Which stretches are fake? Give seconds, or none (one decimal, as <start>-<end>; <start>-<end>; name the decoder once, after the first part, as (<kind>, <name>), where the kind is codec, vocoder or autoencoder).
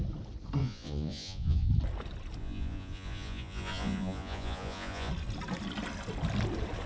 0.6-1.7 (vocoder, Vocos); 2.4-5.1